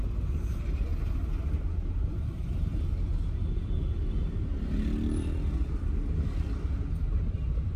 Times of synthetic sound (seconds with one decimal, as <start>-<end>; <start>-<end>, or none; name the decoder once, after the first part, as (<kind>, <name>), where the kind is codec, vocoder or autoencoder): 0.0-0.9 (vocoder, BigVGAN v2); 1.9-2.7; 6.9-7.8